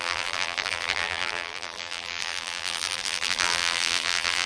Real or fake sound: fake